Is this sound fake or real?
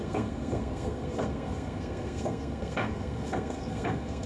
fake